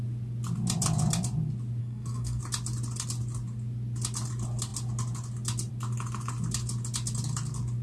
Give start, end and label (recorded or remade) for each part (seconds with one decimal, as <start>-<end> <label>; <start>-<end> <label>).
0.0-1.8 recorded; 1.8-2.4 remade; 2.4-7.8 recorded